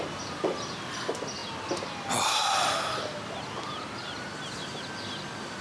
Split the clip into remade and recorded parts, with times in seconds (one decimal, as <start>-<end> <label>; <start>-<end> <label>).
0.0-5.6 recorded